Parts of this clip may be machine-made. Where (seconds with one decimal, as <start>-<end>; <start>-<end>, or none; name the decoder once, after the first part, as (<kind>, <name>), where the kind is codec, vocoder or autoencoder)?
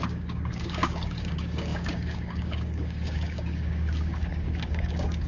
0.0-5.3 (codec, DAC)